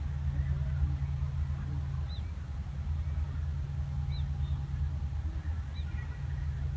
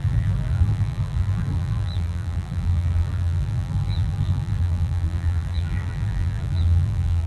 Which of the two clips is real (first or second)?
first